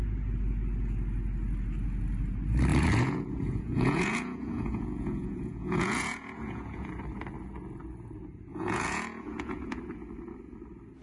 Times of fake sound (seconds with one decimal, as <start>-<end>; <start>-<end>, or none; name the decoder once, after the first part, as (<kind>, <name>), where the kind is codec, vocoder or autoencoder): 2.7-6.9 (vocoder, Vocos); 8.5-9.8